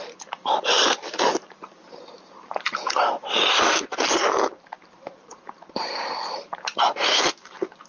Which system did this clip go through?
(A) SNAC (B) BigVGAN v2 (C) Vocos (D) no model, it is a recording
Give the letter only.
B